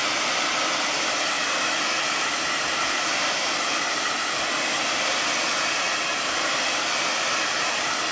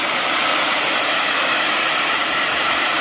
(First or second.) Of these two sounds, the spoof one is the second